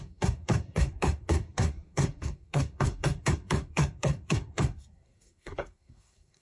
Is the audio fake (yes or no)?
yes